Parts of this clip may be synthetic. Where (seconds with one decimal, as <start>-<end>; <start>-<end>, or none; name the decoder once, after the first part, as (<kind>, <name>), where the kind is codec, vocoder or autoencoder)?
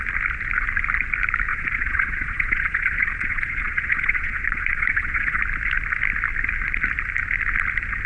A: 1.5-5.4 (vocoder, Vocos)